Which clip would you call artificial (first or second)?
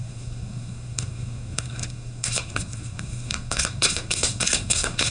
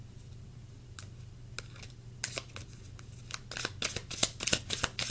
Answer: first